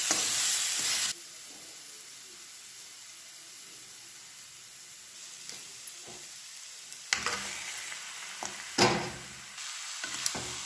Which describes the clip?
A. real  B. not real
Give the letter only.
A